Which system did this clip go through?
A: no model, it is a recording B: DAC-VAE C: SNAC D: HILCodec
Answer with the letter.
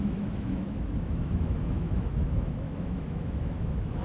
B